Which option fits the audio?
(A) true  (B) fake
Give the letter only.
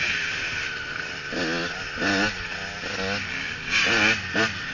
A